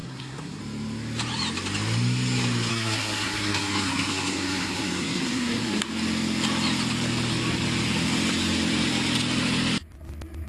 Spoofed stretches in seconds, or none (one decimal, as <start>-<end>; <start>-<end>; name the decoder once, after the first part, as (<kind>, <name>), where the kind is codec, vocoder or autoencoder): 0.0-0.6 (codec, SNAC); 2.7-5.9